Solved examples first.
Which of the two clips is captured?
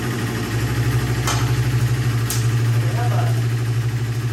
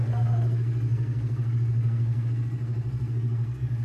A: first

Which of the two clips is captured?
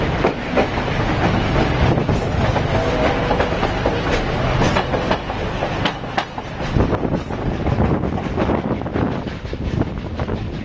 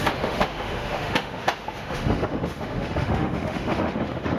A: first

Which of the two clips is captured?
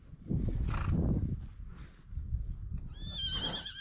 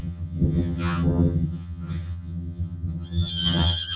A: first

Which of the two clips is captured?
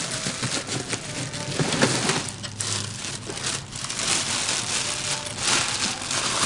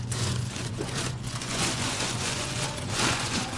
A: first